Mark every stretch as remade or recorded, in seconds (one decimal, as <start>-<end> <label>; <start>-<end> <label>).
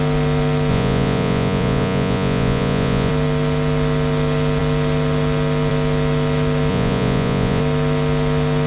0.0-0.7 recorded; 0.7-3.1 remade; 3.1-6.7 recorded; 6.7-7.6 remade; 7.6-8.7 recorded